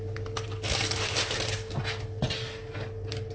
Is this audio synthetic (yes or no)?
no